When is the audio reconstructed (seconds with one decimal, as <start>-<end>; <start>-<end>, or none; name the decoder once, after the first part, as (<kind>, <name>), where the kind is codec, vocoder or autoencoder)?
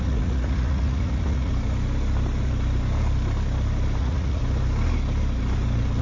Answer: 0.0-1.5 (vocoder, Vocos); 4.0-4.4